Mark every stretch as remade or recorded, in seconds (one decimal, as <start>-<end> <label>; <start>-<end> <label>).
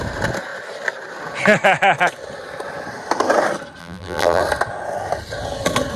0.0-3.8 recorded; 3.8-4.4 remade; 4.4-6.0 recorded